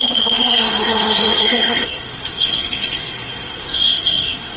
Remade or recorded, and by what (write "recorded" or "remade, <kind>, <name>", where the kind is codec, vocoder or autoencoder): remade, codec, SNAC